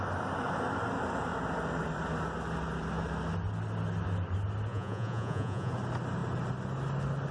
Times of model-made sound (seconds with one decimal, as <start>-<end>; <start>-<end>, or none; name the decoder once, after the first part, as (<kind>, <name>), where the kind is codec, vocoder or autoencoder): 4.7-5.7 (vocoder, Vocos)